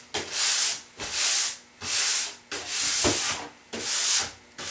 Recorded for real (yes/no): yes